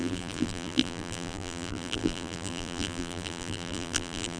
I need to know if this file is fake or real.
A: fake